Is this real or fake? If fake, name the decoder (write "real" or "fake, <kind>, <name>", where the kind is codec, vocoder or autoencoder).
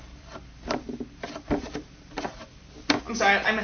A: fake, vocoder, BigVGAN v2